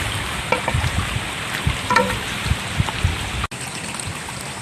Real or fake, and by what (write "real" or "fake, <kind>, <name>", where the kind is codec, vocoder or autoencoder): real